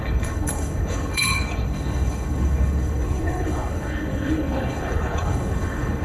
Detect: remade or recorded remade